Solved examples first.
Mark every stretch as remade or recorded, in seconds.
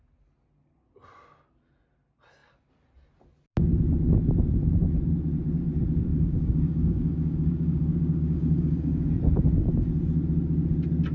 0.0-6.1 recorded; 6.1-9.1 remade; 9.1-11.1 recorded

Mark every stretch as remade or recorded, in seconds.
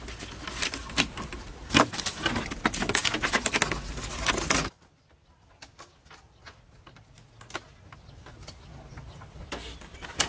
0.0-0.8 recorded; 0.8-1.6 remade; 1.6-10.3 recorded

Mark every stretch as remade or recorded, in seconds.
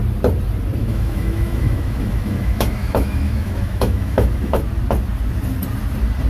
0.0-0.8 recorded; 0.8-4.6 remade; 4.6-6.3 recorded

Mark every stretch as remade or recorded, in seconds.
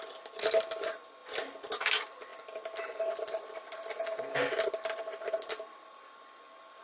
0.0-6.8 recorded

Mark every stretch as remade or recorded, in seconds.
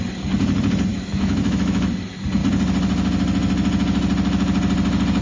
0.0-0.9 recorded; 0.9-1.9 remade; 1.9-5.2 recorded